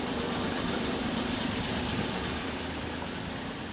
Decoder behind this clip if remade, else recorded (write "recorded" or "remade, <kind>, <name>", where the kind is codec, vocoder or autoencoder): remade, vocoder, BigVGAN v2